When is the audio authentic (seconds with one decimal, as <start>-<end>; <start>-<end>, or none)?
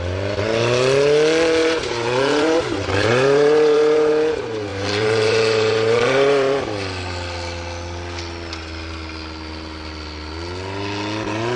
0.0-1.6; 4.1-4.7; 6.6-11.6